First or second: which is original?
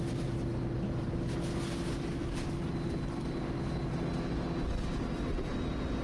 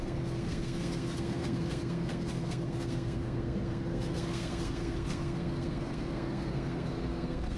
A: first